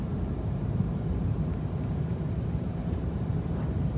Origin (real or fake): fake